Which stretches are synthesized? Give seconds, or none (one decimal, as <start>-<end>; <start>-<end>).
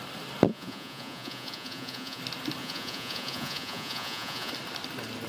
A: 0.5-2.2; 2.6-4.5